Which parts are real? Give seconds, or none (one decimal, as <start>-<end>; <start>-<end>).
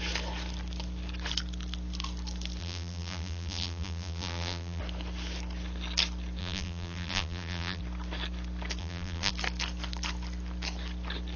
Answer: 0.0-2.6; 4.8-6.4; 7.8-8.8; 9.3-11.4